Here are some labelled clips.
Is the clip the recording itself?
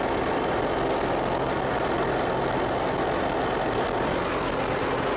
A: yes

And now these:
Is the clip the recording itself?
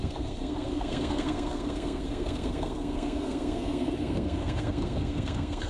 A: no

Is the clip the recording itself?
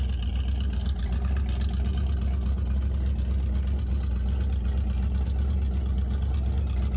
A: yes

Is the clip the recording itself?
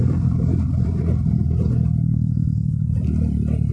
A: yes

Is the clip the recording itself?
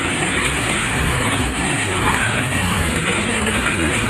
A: no